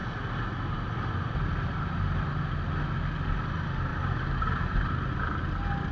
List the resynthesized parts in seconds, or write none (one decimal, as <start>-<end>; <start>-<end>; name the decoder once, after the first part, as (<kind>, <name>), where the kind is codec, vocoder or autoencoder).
3.9-4.9 (vocoder, BigVGAN v2)